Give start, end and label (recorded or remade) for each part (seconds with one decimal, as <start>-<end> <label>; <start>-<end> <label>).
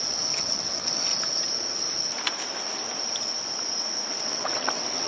0.0-1.1 remade; 1.1-4.2 recorded; 4.2-5.1 remade